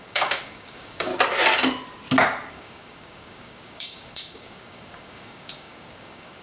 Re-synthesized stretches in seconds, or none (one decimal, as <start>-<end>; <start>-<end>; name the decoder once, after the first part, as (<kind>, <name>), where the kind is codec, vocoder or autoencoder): 0.0-1.1 (codec, DAC); 2.5-6.4